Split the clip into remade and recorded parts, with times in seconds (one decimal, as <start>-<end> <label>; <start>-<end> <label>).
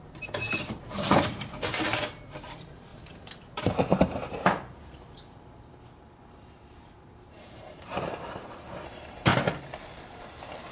0.0-2.9 remade; 2.9-3.4 recorded; 3.4-9.3 remade; 9.3-9.8 recorded; 9.8-10.7 remade